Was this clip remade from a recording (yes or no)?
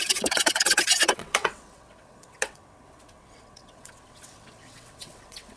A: yes